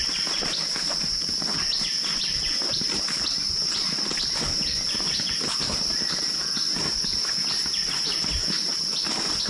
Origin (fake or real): real